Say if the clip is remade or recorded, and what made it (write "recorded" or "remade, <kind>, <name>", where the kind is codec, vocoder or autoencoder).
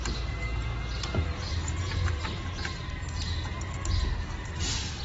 recorded